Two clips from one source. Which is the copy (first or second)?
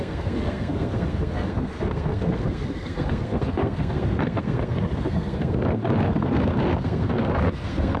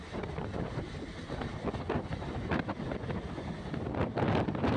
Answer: first